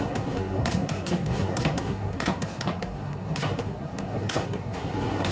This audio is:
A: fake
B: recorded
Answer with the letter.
A